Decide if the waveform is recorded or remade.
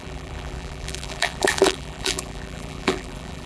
remade